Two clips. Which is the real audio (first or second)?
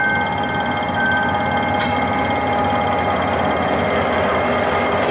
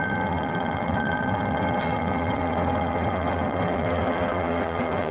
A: first